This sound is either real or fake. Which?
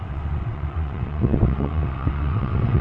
fake